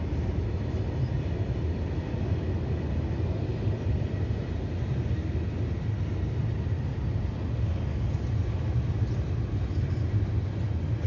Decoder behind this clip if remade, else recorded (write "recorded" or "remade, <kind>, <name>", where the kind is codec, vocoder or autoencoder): recorded